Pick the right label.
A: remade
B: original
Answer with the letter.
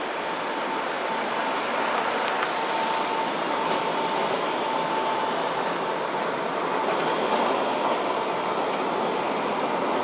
B